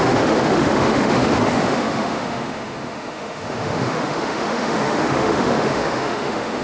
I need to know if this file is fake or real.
fake